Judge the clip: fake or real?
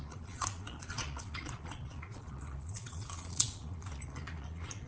fake